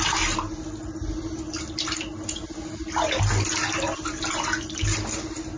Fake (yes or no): no